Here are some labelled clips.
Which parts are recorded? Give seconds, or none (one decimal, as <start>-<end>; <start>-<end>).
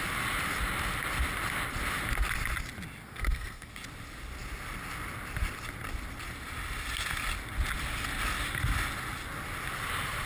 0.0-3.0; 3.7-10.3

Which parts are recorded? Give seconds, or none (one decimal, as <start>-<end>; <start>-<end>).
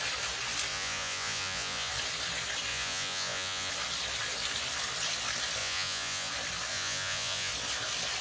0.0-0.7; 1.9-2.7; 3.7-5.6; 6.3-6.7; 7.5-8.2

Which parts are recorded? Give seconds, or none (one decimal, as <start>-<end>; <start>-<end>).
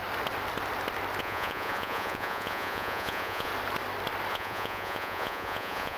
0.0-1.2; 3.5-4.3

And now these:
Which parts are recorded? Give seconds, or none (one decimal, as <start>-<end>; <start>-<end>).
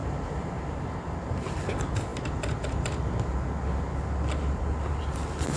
0.0-5.6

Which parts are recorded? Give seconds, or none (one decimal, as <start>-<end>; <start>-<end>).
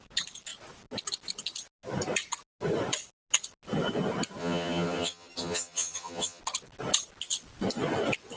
0.0-4.4; 6.4-8.4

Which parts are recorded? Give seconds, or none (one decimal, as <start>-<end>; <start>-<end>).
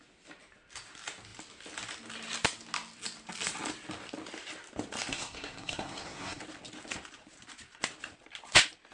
0.0-5.1; 6.4-8.9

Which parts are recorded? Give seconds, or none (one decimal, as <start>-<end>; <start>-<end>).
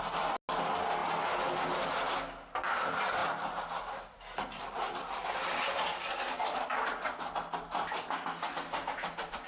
0.0-9.5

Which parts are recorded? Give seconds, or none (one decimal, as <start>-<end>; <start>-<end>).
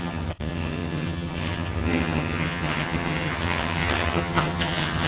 none